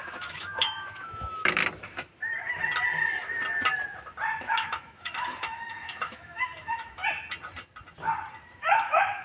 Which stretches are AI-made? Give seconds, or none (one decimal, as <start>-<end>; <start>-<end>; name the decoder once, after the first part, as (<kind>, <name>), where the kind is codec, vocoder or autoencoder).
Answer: 0.0-1.6 (autoencoder, DAC-VAE); 4.4-7.0; 8.6-9.2